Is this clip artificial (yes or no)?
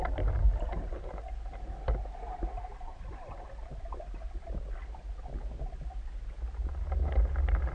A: no